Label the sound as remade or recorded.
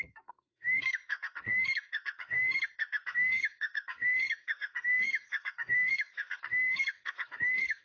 remade